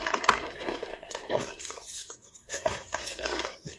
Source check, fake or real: fake